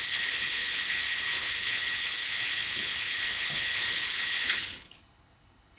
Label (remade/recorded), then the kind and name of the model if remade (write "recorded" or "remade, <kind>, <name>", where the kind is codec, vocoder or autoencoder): remade, codec, HILCodec